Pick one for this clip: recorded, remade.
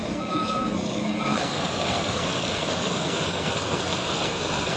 remade